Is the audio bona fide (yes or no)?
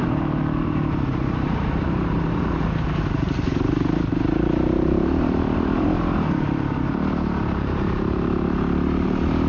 no